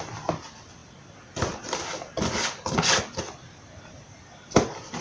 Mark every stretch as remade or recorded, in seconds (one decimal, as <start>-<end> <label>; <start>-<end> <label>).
0.0-5.0 recorded